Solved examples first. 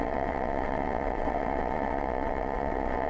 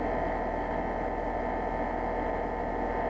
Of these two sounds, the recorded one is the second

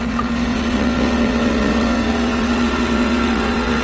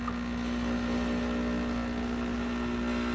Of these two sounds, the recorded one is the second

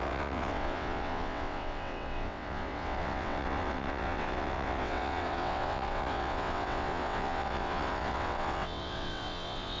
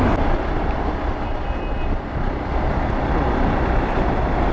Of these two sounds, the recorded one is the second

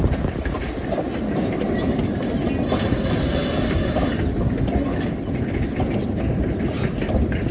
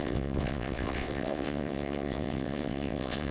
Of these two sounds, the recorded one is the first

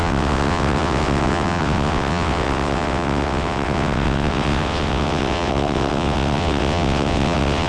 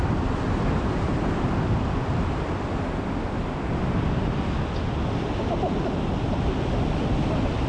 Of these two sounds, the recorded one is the second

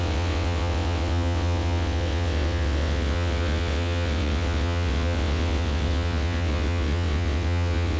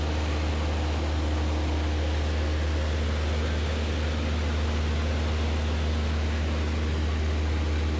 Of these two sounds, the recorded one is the second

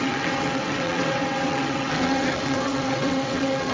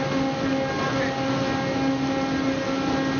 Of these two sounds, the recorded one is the second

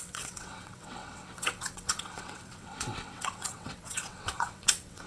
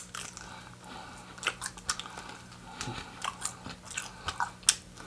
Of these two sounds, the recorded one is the second